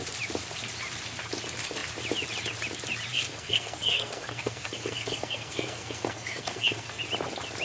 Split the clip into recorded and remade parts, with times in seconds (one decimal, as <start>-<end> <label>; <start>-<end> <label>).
0.0-3.1 recorded; 3.1-7.0 remade; 7.0-7.6 recorded

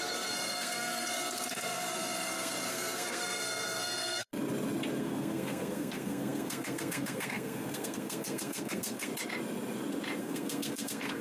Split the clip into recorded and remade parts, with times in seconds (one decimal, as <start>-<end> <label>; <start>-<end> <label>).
0.0-4.3 remade; 4.3-5.0 recorded; 5.0-9.1 remade; 9.1-10.2 recorded; 10.2-11.2 remade

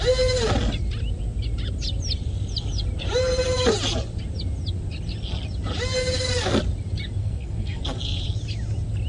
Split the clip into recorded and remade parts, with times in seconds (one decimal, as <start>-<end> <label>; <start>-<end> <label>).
0.0-7.2 recorded; 7.2-7.8 remade; 7.8-9.1 recorded

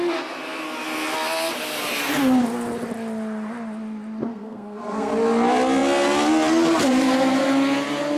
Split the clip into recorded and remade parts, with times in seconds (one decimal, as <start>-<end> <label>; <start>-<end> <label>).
0.0-4.3 recorded; 4.3-5.1 remade; 5.1-8.2 recorded

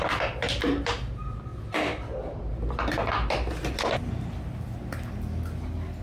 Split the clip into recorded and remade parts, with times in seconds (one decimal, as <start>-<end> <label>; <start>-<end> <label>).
0.0-6.0 recorded